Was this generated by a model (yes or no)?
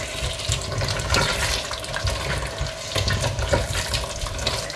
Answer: yes